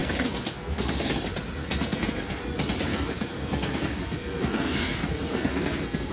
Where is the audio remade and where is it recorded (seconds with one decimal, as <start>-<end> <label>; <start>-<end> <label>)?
0.0-1.2 remade; 1.2-1.6 recorded; 1.6-2.4 remade; 2.4-2.9 recorded; 2.9-6.1 remade